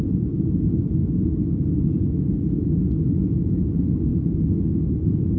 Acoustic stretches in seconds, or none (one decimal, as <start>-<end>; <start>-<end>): 0.0-5.4